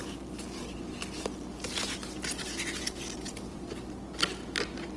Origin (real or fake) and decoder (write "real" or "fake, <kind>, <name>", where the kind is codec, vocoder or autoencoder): real